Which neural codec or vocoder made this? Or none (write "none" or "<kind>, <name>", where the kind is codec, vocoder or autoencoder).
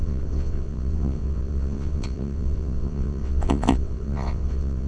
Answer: vocoder, WaveNeXt